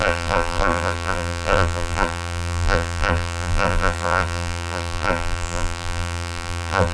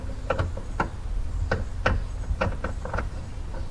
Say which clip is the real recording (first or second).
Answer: second